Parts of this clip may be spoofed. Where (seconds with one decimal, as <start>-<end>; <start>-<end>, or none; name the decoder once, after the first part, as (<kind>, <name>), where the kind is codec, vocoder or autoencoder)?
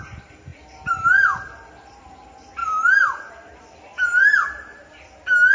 2.6-3.3 (vocoder, BigVGAN v2); 3.9-4.8